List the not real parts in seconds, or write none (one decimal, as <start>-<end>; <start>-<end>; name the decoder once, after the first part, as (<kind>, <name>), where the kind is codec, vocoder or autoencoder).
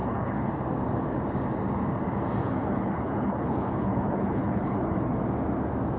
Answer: 0.0-0.5 (codec, HILCodec); 2.4-5.2